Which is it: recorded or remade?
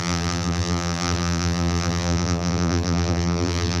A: remade